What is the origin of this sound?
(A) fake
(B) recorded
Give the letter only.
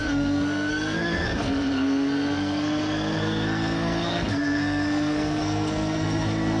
A